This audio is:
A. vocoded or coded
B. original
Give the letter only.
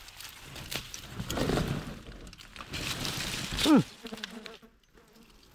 B